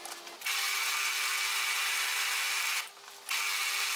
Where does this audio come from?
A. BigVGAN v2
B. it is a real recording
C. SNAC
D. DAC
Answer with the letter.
B